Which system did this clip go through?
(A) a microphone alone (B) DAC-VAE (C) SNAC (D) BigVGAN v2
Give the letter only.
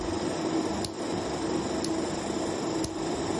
A